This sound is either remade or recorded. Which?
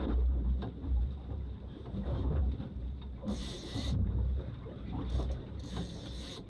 remade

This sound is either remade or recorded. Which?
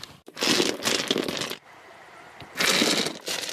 recorded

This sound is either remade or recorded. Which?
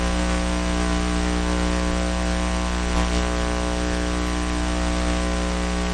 recorded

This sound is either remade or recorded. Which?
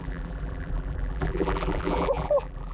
remade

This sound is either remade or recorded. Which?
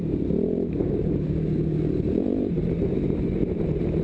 remade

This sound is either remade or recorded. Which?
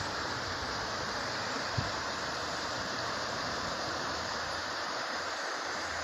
remade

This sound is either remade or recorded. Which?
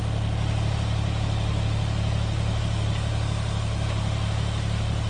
recorded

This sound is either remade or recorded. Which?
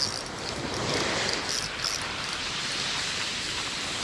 recorded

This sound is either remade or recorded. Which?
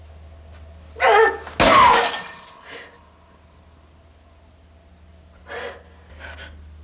recorded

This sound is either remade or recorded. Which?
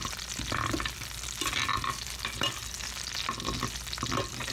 recorded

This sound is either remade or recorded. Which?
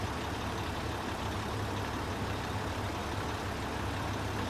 recorded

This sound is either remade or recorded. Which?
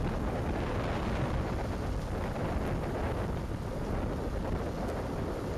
recorded